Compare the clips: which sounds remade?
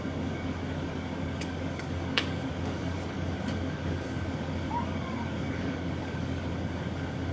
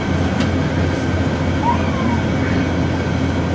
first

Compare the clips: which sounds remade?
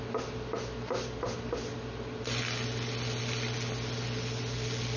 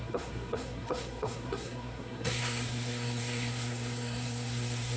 second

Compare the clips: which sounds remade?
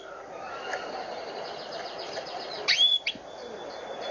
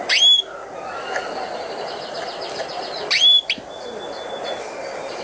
first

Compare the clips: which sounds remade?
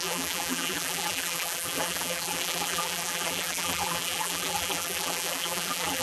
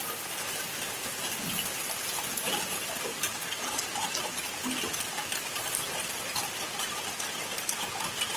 first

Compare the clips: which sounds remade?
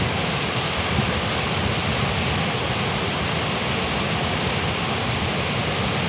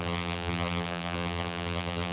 second